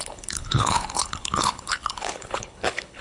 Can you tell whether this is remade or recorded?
remade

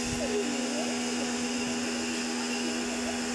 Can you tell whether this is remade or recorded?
recorded